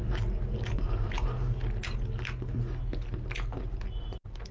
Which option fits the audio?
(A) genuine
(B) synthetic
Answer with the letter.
A